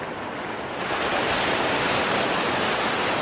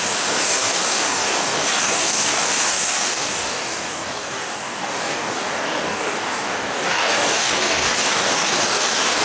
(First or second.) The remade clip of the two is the second